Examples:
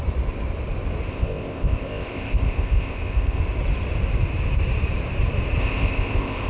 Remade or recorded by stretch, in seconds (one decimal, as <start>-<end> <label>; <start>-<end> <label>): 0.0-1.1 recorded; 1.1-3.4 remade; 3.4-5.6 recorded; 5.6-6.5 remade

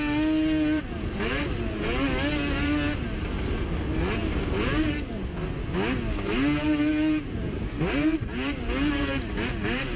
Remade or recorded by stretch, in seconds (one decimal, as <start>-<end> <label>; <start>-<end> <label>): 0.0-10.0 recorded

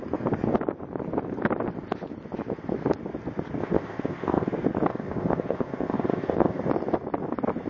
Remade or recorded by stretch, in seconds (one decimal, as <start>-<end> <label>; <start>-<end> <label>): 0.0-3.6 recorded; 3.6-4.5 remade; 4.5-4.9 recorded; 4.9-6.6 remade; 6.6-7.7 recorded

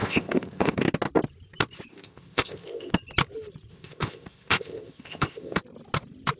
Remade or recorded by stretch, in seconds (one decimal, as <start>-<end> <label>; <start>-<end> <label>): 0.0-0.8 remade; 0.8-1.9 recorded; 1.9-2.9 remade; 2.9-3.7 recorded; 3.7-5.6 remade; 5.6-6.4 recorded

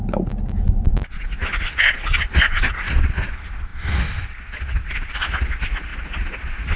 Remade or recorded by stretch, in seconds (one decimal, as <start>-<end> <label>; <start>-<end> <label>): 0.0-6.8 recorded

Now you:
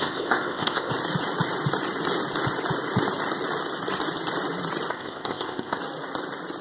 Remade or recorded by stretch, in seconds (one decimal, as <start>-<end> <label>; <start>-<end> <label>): 0.0-0.9 remade; 0.9-4.9 recorded; 4.9-5.8 remade; 5.8-6.6 recorded

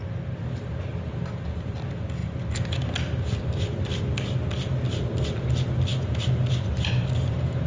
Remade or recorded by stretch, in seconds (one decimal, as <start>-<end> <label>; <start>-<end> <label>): 0.0-7.7 recorded

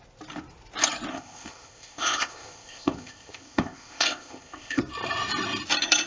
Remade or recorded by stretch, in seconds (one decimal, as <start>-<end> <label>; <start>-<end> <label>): 0.0-1.1 recorded; 1.1-4.8 remade; 4.8-6.1 recorded